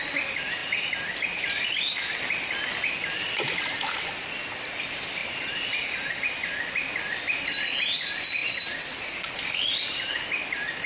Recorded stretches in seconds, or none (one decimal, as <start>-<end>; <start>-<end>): 0.0-10.9